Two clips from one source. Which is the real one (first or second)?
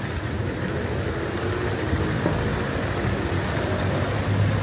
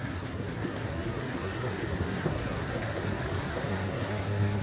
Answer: first